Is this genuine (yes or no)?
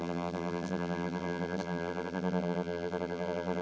no